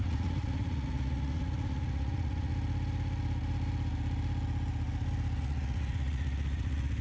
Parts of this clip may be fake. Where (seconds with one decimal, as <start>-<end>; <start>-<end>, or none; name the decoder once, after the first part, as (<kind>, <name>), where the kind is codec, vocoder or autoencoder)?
0.0-2.5 (vocoder, Vocos); 5.4-7.0